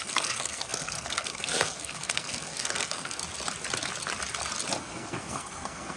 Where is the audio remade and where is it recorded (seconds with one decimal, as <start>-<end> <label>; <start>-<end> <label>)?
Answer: 0.0-3.2 remade; 3.2-4.8 recorded; 4.8-6.0 remade